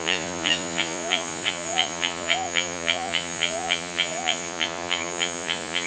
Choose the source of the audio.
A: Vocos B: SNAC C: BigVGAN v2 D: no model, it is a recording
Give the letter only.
A